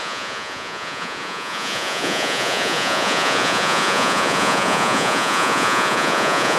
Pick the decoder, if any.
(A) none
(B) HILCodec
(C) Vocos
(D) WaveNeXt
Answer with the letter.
C